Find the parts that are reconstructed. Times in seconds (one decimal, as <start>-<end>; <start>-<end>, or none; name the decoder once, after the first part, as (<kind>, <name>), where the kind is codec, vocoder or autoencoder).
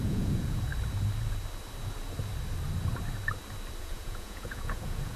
0.0-0.7 (vocoder, Vocos); 3.8-5.2